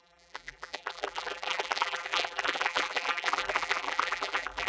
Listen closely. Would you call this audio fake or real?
fake